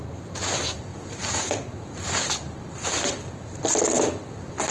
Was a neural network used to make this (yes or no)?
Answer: no